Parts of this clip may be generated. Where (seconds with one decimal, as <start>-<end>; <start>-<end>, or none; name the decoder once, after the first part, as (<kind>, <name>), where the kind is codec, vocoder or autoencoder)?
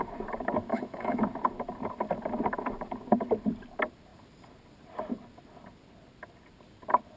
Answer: 0.7-1.2 (autoencoder, DAC-VAE)